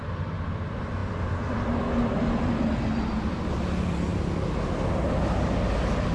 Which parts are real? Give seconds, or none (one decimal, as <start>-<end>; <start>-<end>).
0.0-6.1

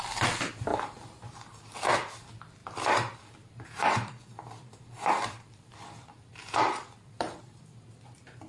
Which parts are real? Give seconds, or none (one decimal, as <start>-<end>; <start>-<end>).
0.0-0.7; 1.9-2.6; 7.4-8.5

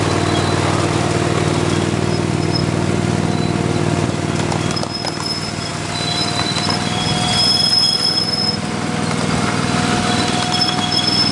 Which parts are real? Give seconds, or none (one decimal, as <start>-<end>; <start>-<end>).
0.0-11.3

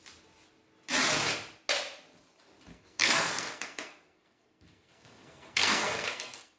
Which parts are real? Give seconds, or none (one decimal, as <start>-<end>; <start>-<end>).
0.0-2.7

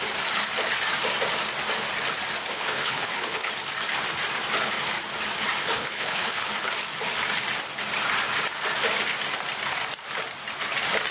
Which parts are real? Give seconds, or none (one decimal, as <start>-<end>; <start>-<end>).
0.0-2.5; 3.5-5.6; 6.5-11.1

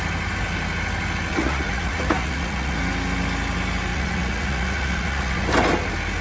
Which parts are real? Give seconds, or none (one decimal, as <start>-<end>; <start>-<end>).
0.0-1.3; 2.8-3.9; 5.5-6.2